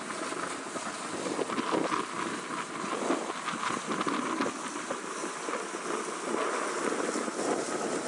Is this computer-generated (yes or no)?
no